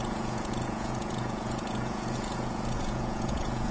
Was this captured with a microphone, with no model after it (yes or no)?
no